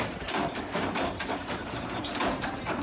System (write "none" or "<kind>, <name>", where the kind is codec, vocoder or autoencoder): vocoder, BigVGAN v2